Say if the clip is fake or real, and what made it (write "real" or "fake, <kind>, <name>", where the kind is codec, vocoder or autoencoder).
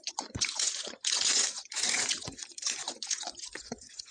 fake, vocoder, Vocos